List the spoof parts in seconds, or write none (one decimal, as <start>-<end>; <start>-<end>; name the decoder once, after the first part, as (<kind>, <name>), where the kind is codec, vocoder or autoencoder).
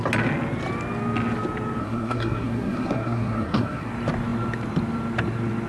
1.8-3.9 (codec, SNAC)